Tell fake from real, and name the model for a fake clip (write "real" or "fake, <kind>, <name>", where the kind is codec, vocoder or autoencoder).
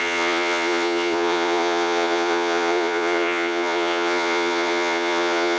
fake, vocoder, Vocos